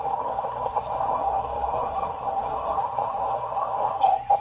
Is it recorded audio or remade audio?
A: remade